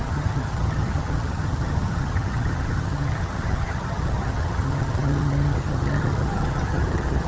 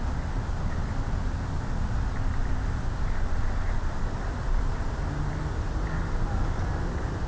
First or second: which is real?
second